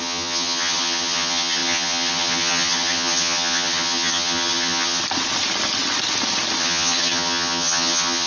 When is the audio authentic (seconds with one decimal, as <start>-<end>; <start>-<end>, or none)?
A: 5.0-6.6